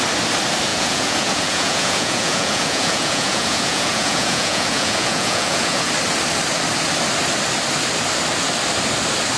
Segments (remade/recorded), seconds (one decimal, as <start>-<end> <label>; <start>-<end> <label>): 0.0-0.7 recorded; 0.7-5.9 remade; 5.9-9.4 recorded